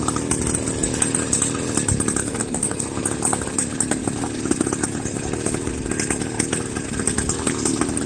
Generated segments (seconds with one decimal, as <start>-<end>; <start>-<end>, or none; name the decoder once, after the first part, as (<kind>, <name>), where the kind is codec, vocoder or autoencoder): 2.2-2.8 (codec, SNAC)